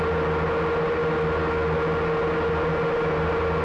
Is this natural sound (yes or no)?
yes